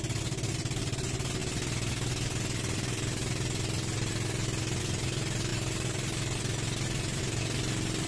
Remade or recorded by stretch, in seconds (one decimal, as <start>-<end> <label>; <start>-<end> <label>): 0.0-8.1 recorded